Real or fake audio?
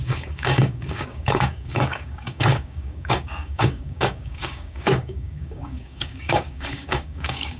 fake